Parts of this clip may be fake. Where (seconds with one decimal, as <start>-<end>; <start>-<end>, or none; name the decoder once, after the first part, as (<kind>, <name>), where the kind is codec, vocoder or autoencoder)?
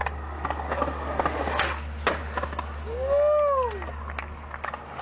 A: none